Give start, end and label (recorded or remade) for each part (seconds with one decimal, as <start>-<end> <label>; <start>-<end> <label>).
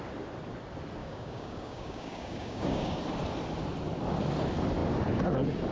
0.0-1.0 recorded; 1.0-3.0 remade; 3.0-5.7 recorded